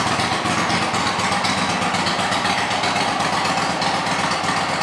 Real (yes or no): yes